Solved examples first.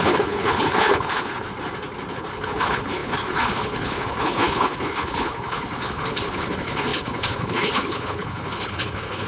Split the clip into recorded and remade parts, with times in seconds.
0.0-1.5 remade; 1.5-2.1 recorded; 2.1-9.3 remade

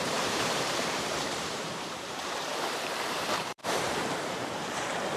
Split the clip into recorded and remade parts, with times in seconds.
0.0-5.2 remade

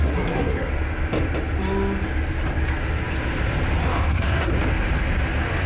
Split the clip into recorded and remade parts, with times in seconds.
0.0-0.7 remade; 0.7-4.1 recorded; 4.1-4.5 remade; 4.5-5.7 recorded

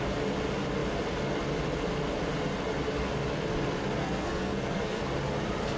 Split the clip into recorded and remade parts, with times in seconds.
0.0-4.0 recorded; 4.0-5.0 remade; 5.0-5.8 recorded

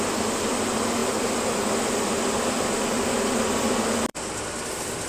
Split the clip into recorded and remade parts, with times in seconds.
0.0-1.0 recorded; 1.0-2.7 remade; 2.7-4.1 recorded; 4.1-5.1 remade

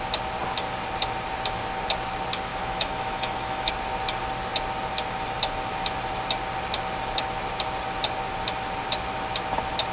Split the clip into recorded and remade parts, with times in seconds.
0.0-2.5 recorded; 2.5-3.7 remade; 3.7-9.9 recorded